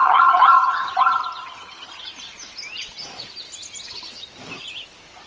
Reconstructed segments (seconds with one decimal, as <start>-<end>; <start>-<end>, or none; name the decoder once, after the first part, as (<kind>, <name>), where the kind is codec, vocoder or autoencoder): 0.0-2.0 (vocoder, HiFi-GAN)